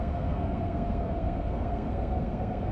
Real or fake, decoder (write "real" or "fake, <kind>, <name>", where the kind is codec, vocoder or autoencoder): fake, codec, SNAC